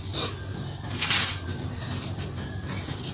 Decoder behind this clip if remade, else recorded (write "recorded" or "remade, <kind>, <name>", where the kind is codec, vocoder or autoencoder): recorded